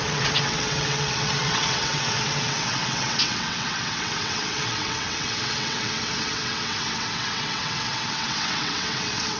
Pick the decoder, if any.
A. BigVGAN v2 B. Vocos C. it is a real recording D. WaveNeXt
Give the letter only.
D